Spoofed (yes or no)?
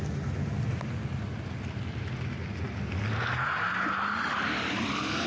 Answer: no